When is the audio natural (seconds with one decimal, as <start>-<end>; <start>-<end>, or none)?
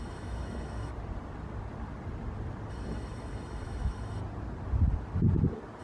0.9-2.7; 4.2-5.8